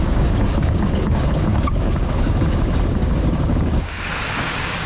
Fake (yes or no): yes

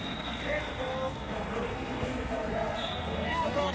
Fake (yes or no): yes